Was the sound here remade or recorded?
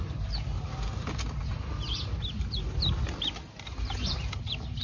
recorded